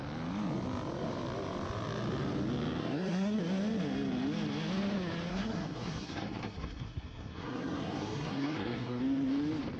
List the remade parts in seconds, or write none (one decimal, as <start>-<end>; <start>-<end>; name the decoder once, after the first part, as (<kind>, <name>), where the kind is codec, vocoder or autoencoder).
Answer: 2.8-3.4 (codec, SNAC); 5.3-9.0